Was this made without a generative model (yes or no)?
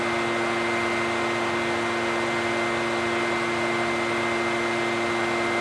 yes